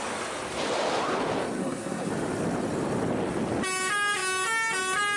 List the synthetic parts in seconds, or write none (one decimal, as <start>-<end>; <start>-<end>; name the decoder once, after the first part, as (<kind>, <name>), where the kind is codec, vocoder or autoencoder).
1.6-2.1 (codec, SNAC)